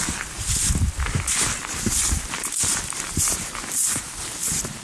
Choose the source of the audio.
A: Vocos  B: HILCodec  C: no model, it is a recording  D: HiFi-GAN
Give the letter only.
C